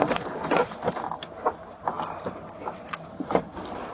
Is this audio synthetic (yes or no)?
no